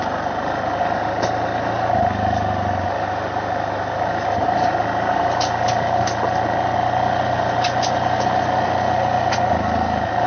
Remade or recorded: recorded